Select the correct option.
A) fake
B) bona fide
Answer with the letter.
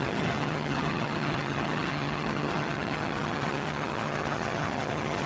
A